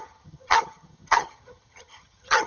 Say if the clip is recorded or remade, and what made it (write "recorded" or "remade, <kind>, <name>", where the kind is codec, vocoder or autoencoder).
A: remade, vocoder, HiFi-GAN